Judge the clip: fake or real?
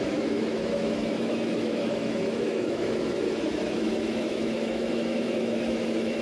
fake